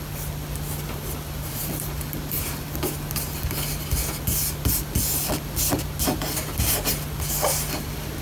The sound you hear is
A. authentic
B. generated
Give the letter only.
A